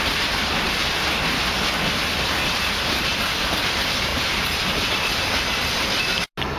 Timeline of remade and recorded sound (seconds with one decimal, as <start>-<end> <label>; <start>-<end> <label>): 0.0-6.6 recorded